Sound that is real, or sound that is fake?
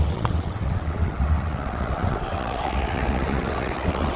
fake